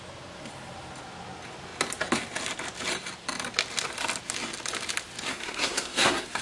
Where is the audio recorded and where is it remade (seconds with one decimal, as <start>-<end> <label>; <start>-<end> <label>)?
0.0-5.3 recorded; 5.3-6.4 remade